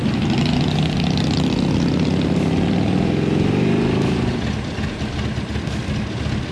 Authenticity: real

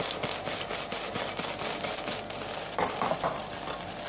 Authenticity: real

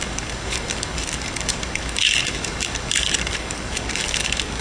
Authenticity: fake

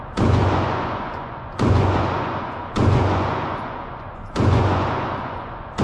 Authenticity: fake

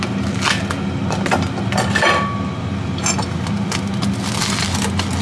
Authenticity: real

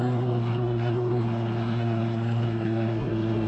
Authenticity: fake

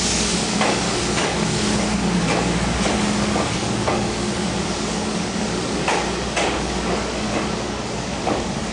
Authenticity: fake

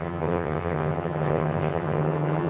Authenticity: fake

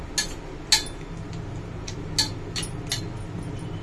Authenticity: real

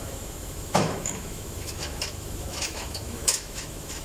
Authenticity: fake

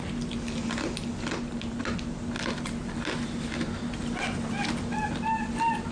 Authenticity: real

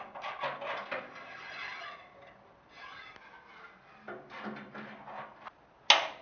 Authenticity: real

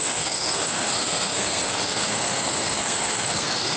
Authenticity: fake